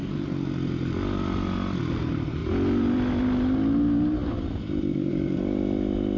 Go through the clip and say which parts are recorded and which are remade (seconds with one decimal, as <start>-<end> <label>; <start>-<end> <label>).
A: 0.0-2.4 recorded; 2.4-3.1 remade; 3.1-4.2 recorded; 4.2-5.1 remade; 5.1-6.2 recorded